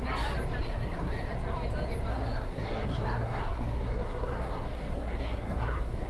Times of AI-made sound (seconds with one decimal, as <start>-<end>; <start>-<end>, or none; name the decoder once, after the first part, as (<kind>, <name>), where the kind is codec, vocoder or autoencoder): 0.6-1.3 (codec, SNAC); 2.1-6.1